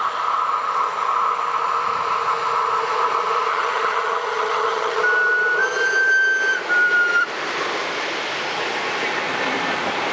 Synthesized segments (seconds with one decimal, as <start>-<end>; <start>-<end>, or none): 3.5-5.0